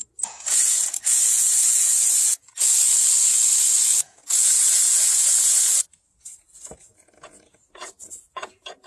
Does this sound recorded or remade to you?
remade